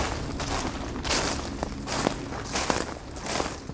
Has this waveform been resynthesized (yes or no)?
no